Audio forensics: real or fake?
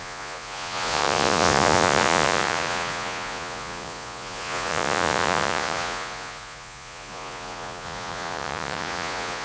fake